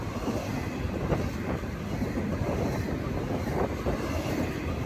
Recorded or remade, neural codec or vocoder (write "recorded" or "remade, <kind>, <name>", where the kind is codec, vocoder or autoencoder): recorded